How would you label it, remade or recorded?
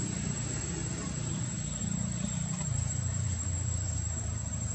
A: remade